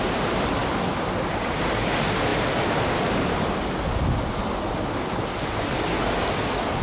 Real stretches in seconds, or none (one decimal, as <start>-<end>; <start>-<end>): 0.0-6.8